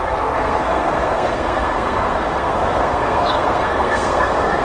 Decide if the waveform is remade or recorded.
remade